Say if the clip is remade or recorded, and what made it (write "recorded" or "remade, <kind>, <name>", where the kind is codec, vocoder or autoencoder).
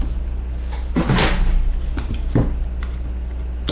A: recorded